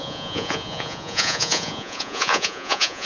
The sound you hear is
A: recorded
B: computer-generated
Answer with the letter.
B